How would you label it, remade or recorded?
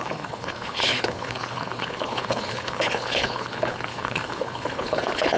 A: remade